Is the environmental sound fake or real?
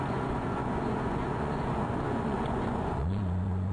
fake